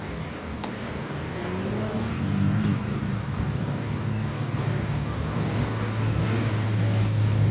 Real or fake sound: fake